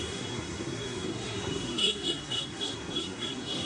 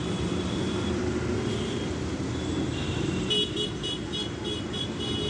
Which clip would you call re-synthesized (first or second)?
first